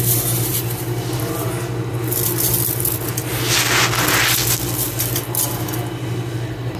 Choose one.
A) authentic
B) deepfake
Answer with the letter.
A